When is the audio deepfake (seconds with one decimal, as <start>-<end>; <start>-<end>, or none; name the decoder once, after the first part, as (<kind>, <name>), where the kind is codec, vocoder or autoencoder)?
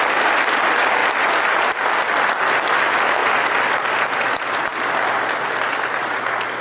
none